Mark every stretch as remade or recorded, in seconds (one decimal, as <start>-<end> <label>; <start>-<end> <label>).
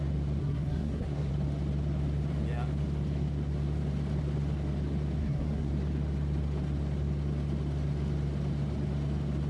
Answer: 0.0-0.4 recorded; 0.4-1.3 remade; 1.3-5.2 recorded; 5.2-5.7 remade; 5.7-9.5 recorded